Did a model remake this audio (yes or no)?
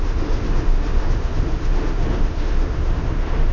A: yes